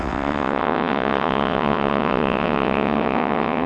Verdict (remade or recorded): remade